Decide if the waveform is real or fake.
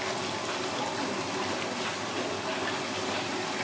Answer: real